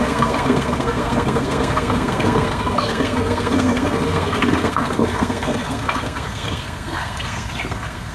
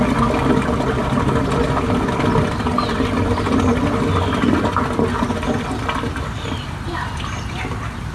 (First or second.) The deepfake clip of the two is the first